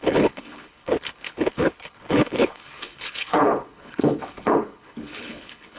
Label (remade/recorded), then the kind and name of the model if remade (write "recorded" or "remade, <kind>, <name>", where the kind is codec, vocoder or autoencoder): remade, codec, HILCodec